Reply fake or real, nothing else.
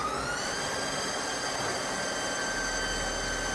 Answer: real